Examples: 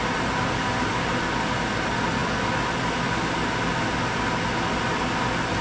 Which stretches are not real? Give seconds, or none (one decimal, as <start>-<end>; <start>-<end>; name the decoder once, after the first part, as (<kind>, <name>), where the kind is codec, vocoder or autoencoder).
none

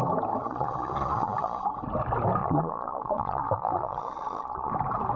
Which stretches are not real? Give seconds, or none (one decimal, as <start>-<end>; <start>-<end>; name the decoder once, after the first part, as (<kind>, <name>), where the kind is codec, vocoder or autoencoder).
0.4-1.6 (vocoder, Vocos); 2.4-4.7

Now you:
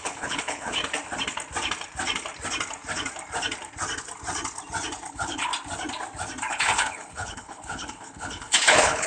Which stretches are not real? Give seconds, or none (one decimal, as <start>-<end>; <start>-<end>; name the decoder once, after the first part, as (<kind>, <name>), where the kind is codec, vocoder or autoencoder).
0.0-0.8 (codec, HILCodec); 5.1-5.5; 6.5-9.1